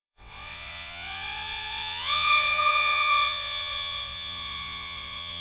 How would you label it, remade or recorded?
remade